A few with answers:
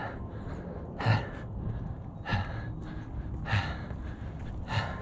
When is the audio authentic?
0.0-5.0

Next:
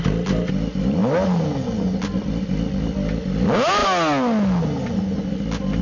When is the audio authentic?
0.0-5.8

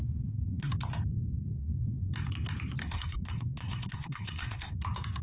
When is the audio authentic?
0.7-1.5; 2.1-2.8; 4.7-5.2

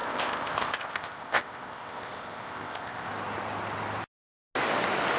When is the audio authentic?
3.1-5.2

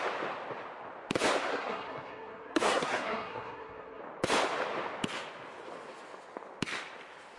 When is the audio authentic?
0.0-1.5; 4.0-7.4

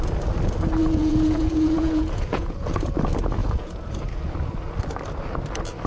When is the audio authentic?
0.0-0.8; 2.9-3.4; 4.3-5.9

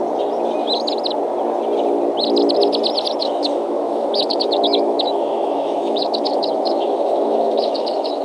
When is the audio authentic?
0.0-3.2

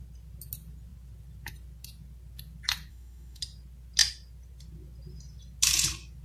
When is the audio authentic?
0.0-2.9; 3.4-6.2